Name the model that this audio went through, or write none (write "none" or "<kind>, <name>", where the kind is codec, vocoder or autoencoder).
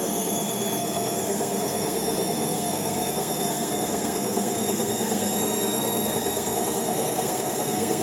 codec, SNAC